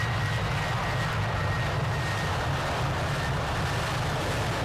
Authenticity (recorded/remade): recorded